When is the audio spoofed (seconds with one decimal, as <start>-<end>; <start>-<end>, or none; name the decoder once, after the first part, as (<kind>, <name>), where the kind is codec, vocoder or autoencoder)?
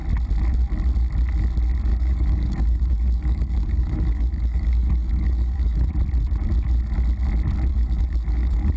1.9-5.9 (codec, DAC); 7.7-8.8